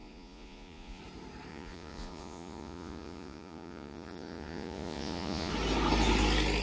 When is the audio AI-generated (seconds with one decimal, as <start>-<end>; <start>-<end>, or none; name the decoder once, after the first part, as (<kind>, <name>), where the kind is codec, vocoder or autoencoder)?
0.0-1.0 (vocoder, Vocos); 1.5-5.5